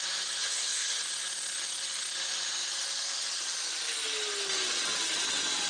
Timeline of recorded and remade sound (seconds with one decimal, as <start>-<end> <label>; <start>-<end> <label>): 0.0-0.4 recorded; 0.4-1.0 remade; 1.0-5.7 recorded